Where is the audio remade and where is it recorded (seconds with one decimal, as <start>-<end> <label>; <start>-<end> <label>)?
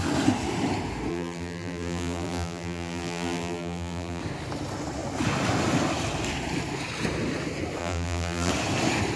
0.0-1.1 recorded; 1.1-4.2 remade; 4.2-7.8 recorded; 7.8-8.5 remade; 8.5-9.2 recorded